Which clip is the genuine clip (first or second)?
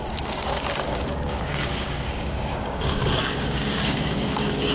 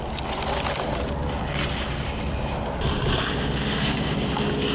second